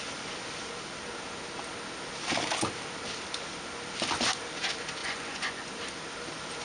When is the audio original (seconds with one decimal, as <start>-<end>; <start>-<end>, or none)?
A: 0.0-5.0; 5.7-6.6